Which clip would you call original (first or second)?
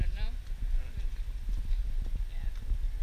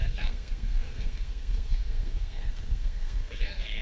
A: first